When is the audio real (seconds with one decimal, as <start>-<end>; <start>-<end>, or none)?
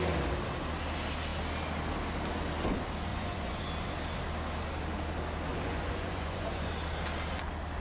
0.0-3.1; 3.6-5.5; 6.7-7.8